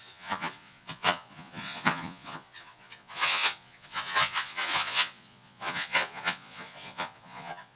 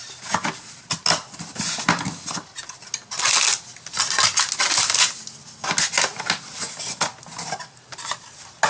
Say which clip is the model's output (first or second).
first